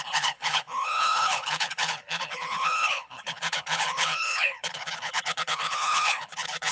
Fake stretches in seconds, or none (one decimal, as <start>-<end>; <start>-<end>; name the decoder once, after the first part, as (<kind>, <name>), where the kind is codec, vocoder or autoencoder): 0.0-6.7 (codec, HILCodec)